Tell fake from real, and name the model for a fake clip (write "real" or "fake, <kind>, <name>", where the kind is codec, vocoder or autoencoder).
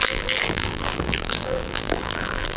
fake, vocoder, BigVGAN v2